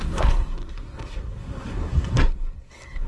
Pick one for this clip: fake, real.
fake